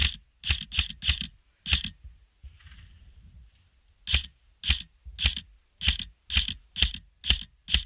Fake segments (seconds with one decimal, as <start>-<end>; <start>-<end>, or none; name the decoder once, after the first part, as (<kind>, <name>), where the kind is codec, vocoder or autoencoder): none